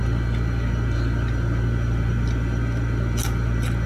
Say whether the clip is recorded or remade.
recorded